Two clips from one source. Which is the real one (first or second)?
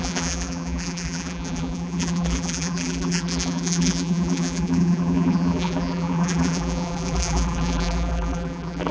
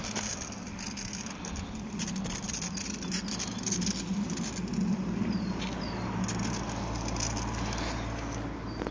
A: second